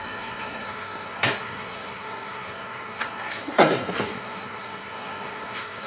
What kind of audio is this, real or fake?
fake